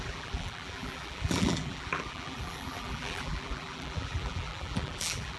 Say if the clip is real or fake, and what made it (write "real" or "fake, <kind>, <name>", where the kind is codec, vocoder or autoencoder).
fake, vocoder, BigVGAN v2